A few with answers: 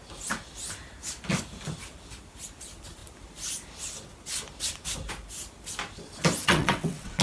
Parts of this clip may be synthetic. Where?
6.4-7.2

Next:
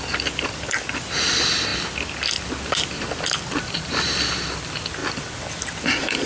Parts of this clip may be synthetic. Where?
0.0-1.7; 3.6-5.0; 5.5-6.3

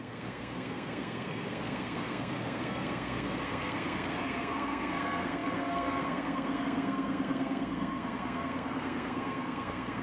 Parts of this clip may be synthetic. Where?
0.0-10.0

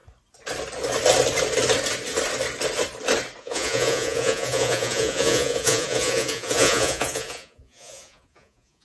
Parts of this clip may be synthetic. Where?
3.4-8.8

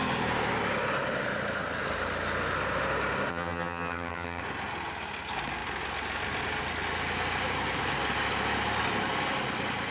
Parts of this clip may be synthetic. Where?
3.3-4.4

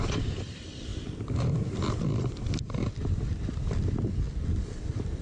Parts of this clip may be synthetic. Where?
0.0-5.2

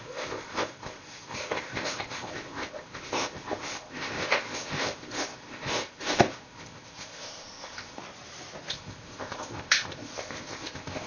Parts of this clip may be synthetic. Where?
0.0-8.0; 8.7-11.1